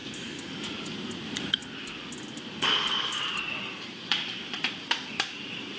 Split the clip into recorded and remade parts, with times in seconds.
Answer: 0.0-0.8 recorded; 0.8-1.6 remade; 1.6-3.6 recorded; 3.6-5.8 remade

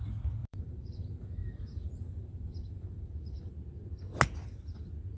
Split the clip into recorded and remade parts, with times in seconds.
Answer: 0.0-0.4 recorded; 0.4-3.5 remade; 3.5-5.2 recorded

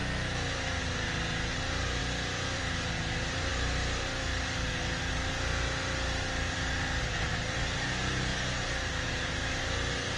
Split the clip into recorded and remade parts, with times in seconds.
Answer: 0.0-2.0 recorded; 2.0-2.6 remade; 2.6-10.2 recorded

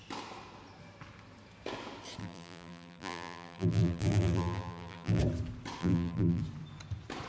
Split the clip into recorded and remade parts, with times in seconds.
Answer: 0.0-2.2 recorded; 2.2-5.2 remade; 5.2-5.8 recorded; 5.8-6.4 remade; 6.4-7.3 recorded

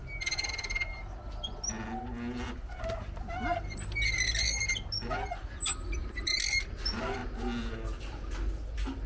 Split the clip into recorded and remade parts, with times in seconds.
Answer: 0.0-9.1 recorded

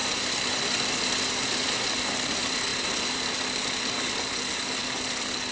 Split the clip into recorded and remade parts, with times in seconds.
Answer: 0.0-5.5 recorded